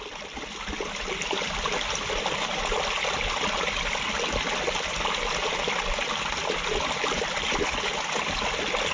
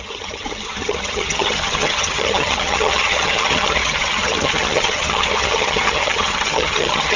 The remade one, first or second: second